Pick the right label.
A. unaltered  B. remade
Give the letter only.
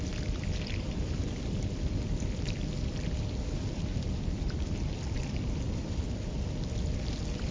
B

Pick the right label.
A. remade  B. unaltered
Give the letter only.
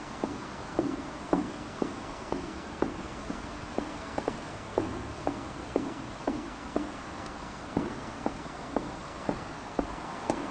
A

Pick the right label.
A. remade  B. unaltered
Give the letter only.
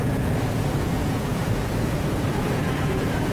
A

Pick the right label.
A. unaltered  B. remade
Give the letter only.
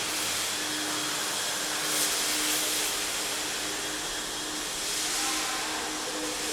A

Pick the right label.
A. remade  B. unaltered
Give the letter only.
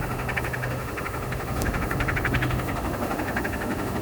A